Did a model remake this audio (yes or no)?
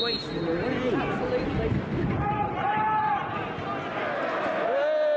no